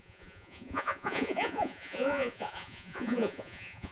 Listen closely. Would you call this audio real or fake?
fake